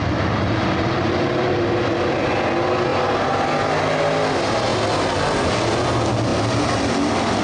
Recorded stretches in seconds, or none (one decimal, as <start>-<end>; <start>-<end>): 0.0-7.4